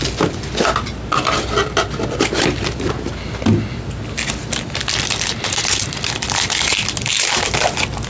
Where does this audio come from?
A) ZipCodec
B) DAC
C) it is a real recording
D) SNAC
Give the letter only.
C